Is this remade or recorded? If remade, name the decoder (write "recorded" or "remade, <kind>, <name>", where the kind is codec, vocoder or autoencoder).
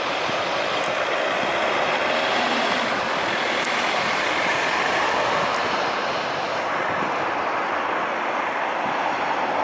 recorded